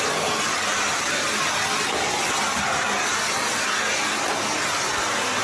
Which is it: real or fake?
real